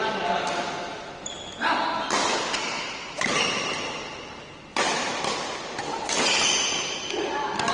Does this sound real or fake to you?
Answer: real